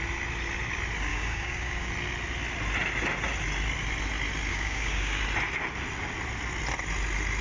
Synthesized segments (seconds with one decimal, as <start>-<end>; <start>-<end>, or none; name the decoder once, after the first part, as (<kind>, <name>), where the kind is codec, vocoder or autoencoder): 1.1-1.9 (codec, DAC); 4.5-5.2